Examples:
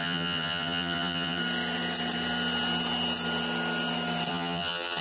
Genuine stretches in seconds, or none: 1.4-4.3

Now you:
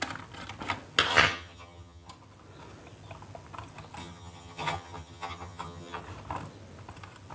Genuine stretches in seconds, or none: 0.0-1.1; 2.1-4.0; 6.0-7.3

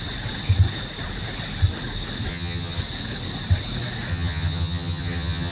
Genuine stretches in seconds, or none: 0.0-2.3; 2.8-4.1